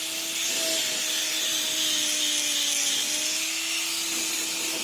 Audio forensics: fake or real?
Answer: real